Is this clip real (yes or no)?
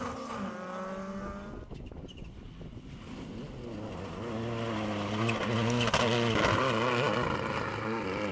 yes